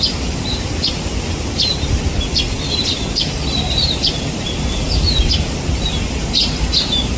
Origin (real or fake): real